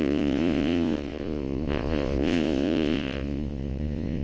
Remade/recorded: remade